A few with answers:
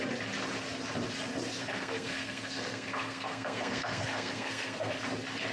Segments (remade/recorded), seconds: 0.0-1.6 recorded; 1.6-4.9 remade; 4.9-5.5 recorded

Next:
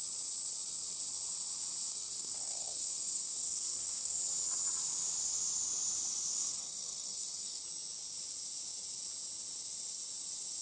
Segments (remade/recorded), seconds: 0.0-1.9 recorded; 1.9-4.2 remade; 4.2-6.3 recorded; 6.3-7.6 remade; 7.6-10.6 recorded